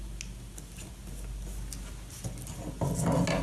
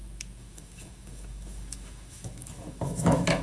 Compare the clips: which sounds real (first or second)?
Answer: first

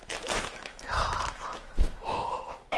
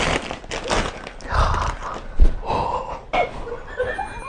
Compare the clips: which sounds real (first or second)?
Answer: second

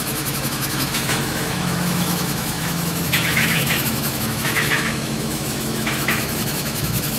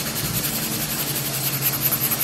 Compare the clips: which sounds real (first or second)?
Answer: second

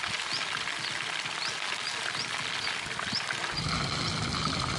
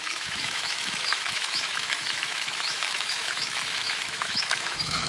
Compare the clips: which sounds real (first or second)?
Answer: first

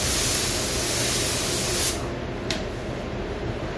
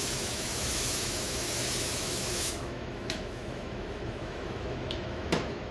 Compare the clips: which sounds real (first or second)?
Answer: first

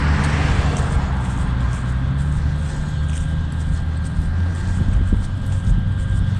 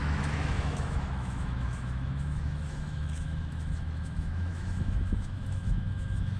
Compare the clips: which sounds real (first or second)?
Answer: first